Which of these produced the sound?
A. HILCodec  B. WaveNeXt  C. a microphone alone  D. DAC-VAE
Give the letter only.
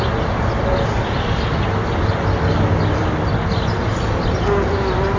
C